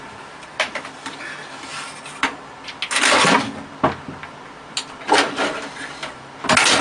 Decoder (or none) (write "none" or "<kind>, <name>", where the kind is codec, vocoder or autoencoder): none